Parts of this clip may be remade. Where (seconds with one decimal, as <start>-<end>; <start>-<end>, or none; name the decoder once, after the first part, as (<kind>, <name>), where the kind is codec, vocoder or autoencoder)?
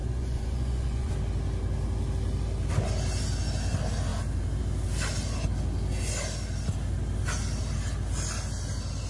0.0-1.1 (vocoder, Vocos)